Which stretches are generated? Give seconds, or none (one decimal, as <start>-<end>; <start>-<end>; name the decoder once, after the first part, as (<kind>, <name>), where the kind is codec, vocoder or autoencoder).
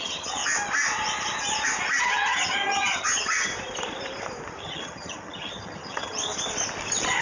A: 0.0-0.4 (vocoder, HiFi-GAN); 2.0-3.5; 4.6-6.3